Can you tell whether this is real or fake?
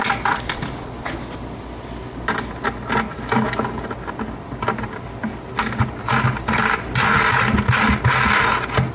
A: real